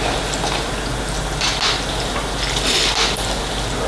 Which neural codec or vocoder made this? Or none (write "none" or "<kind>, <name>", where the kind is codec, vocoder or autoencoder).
none